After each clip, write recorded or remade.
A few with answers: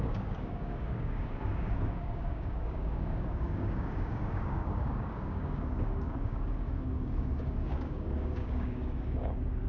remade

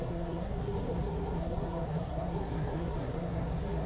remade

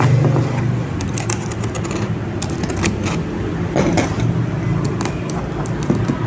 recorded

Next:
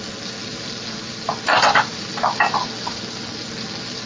recorded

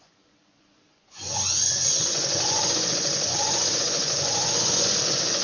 remade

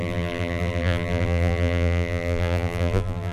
remade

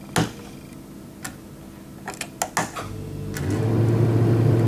recorded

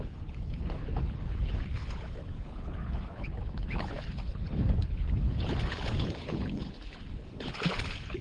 remade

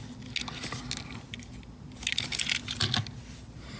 recorded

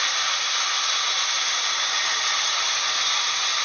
recorded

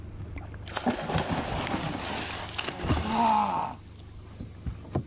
recorded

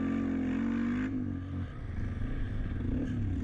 recorded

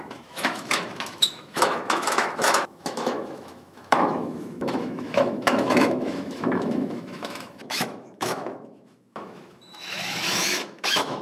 remade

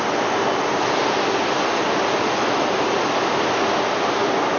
recorded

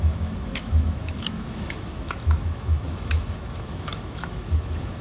remade